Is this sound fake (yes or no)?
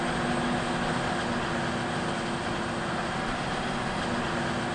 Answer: no